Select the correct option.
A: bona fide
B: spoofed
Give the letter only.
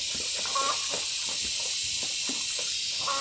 A